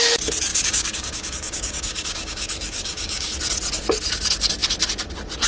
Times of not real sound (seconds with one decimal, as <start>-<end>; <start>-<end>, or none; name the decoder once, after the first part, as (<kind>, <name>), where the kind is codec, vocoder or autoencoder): 0.5-3.3 (codec, DAC)